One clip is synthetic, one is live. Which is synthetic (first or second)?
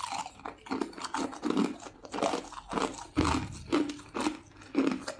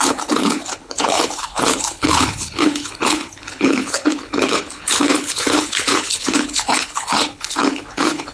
second